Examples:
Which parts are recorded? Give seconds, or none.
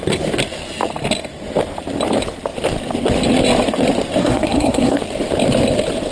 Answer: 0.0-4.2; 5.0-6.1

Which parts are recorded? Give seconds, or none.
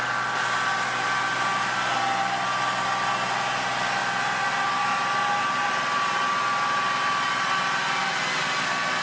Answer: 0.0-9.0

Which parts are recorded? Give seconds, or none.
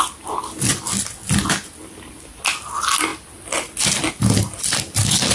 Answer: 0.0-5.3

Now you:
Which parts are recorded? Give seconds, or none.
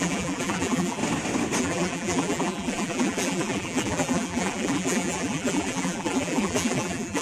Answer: 1.0-1.6